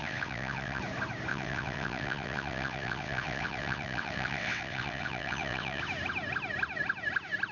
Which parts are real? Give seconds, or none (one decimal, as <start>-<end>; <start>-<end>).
0.8-1.3; 5.8-7.5